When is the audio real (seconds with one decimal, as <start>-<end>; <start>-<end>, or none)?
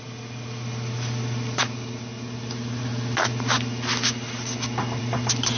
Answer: 0.0-5.6